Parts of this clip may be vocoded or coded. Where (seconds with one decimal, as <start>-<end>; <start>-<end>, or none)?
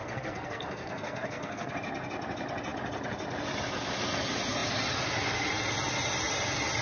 0.0-1.7